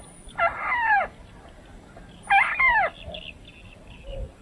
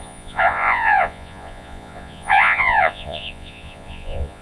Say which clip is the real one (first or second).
first